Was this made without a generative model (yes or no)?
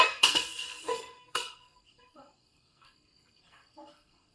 no